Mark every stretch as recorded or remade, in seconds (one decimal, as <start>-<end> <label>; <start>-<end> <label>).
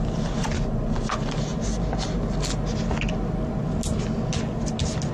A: 0.0-5.1 recorded